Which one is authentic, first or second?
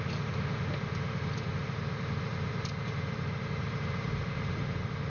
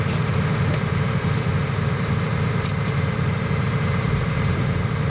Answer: first